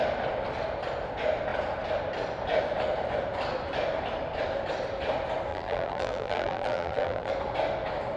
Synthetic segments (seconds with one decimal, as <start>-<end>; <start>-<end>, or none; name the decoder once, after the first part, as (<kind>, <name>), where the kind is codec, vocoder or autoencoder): 5.5-7.3 (vocoder, BigVGAN v2)